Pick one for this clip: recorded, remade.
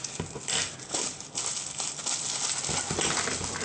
recorded